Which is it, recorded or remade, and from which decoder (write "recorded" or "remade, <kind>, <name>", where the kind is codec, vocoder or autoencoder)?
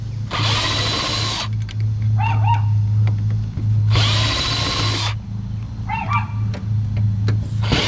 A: recorded